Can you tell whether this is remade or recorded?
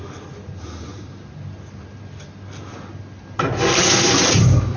recorded